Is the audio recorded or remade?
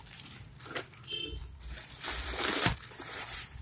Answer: remade